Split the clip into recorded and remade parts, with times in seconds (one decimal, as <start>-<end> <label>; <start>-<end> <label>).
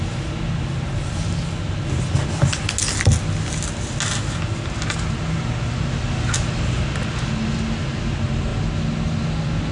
0.0-9.7 recorded